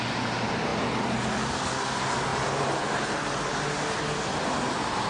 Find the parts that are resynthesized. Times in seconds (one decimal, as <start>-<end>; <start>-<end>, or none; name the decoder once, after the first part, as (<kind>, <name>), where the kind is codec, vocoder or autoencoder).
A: 2.3-3.5 (vocoder, BigVGAN v2)